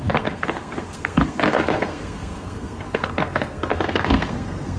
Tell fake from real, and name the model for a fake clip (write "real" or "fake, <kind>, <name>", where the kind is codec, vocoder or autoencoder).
fake, codec, SNAC